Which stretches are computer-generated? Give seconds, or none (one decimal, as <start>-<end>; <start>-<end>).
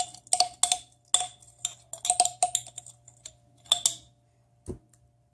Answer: none